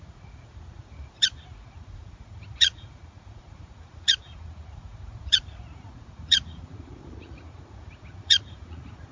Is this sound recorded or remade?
remade